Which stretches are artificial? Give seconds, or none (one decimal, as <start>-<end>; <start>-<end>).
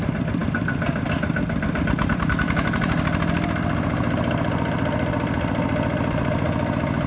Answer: none